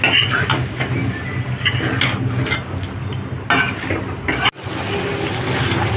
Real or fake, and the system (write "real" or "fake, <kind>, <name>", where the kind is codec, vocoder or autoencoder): real